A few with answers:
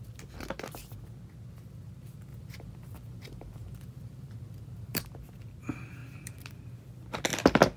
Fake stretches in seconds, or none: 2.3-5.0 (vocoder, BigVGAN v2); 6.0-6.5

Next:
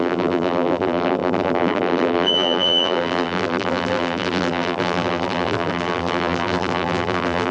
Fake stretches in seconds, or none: 0.0-7.5 (vocoder, BigVGAN v2)

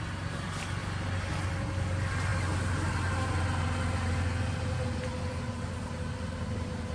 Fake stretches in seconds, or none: 0.8-1.5 (vocoder, BigVGAN v2)

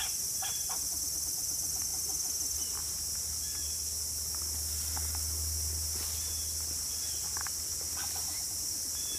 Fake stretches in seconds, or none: none

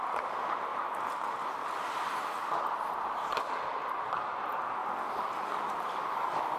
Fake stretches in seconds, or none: none